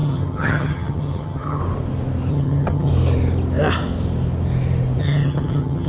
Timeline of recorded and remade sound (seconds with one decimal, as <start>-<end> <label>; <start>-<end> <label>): 0.0-1.6 remade; 1.6-2.3 recorded; 2.3-2.9 remade; 2.9-5.0 recorded; 5.0-5.9 remade